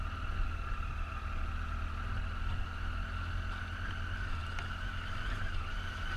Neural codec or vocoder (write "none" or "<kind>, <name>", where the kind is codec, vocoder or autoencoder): none